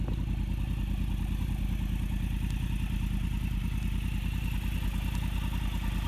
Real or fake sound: real